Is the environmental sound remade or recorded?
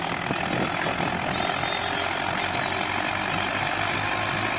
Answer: recorded